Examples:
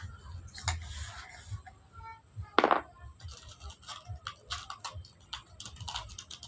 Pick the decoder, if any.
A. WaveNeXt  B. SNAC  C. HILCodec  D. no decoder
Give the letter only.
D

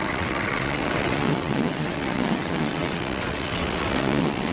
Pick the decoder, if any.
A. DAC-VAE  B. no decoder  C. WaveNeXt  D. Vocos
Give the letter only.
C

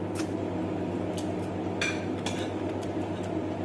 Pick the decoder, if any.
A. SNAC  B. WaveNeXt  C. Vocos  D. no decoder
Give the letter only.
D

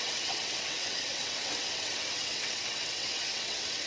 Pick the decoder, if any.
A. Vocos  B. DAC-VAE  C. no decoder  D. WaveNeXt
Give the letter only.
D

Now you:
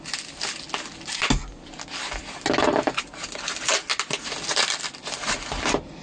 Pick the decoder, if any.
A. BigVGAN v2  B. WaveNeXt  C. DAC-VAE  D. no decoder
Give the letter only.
D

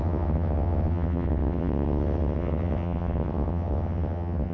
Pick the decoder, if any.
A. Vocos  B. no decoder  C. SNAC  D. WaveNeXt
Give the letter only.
D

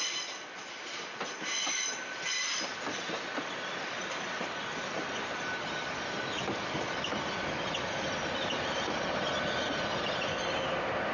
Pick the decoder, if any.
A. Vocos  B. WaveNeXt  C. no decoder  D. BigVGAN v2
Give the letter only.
C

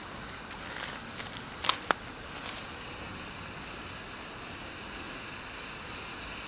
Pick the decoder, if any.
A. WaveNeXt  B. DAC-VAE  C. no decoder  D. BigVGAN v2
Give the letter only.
C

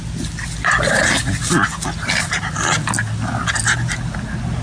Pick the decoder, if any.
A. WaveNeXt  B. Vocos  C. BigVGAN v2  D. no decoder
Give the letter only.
D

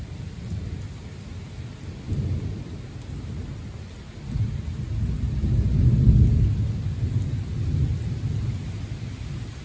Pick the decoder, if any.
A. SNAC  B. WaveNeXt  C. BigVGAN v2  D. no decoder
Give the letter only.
D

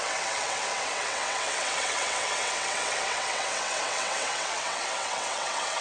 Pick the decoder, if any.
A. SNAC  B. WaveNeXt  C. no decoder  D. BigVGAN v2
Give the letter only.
B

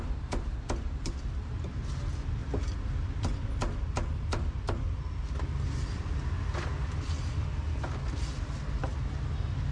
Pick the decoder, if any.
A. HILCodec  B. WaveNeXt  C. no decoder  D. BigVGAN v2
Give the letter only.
C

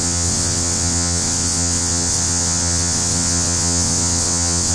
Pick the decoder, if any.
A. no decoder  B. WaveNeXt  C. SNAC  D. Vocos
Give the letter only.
B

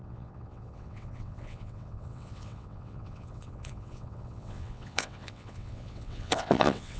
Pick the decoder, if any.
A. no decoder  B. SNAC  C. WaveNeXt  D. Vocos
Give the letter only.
C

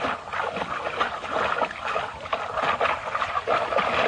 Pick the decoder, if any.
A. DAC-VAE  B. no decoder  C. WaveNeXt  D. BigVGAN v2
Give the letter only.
B